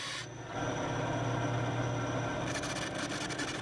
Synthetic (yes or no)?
no